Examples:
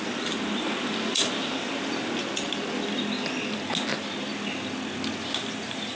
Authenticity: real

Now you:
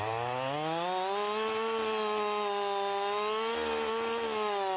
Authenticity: real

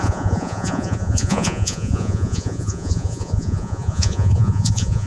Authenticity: fake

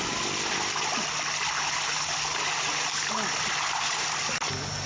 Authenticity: real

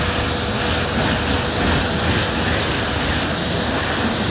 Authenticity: real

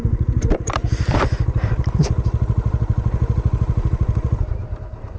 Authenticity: fake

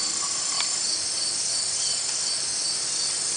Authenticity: real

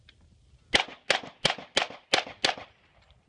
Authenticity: real